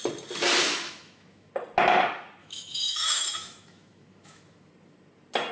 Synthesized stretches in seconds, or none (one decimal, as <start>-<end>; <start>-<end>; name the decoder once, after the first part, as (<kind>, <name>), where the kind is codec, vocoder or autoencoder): 0.6-1.5 (autoencoder, DAC-VAE); 2.4-4.7